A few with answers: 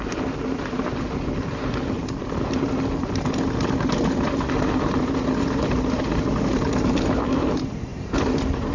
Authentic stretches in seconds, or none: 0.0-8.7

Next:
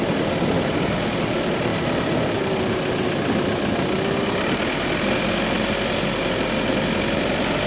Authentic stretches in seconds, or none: 0.0-7.7

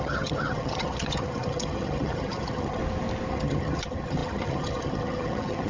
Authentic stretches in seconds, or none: 2.8-3.3

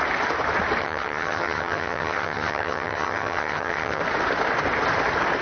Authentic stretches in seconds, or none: 0.0-0.8; 4.0-5.4

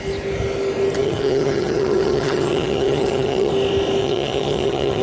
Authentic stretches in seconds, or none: 0.0-1.0; 3.5-4.0

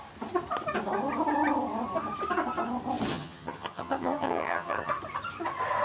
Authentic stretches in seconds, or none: 0.0-3.1; 4.9-5.8

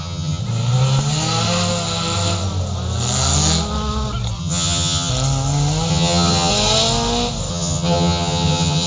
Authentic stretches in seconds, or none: 0.4-4.4; 5.1-5.9; 6.5-7.5

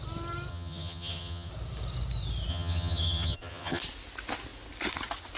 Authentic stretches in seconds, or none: 0.0-0.5; 1.5-2.5; 3.8-5.4